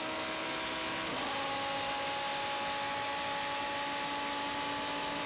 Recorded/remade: recorded